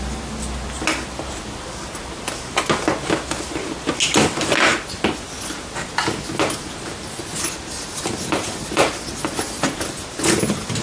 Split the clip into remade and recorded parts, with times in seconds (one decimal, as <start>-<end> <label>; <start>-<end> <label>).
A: 0.0-10.8 recorded